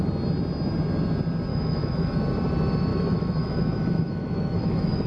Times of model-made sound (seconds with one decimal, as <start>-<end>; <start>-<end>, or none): 1.5-2.2; 2.9-5.1